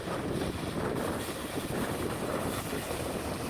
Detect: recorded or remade remade